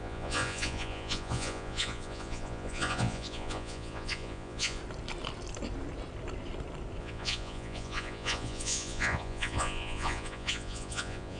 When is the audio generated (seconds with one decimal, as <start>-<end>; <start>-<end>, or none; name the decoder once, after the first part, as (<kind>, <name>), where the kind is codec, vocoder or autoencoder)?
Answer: 0.0-4.8 (vocoder, Vocos); 7.0-11.4